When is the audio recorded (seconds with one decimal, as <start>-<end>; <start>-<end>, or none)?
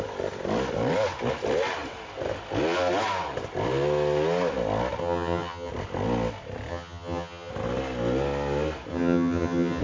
0.0-5.0; 5.7-6.7; 7.5-8.9